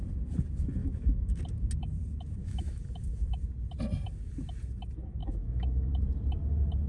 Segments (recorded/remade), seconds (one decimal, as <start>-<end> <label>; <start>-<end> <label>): 0.0-0.8 recorded; 0.8-1.4 remade; 1.4-2.4 recorded; 2.4-2.9 remade; 2.9-5.2 recorded; 5.2-5.9 remade; 5.9-6.9 recorded